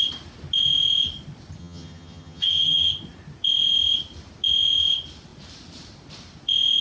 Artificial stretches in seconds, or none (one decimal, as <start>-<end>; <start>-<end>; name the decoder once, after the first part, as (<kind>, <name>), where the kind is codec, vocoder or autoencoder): 1.6-2.9 (vocoder, HiFi-GAN)